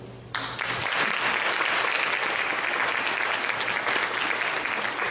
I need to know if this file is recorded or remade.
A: recorded